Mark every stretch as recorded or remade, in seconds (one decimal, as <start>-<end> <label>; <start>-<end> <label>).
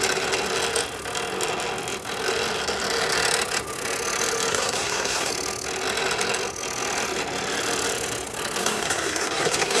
0.0-4.5 recorded; 4.5-5.3 remade; 5.3-8.6 recorded; 8.6-9.8 remade